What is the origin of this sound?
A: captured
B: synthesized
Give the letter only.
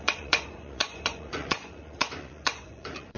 B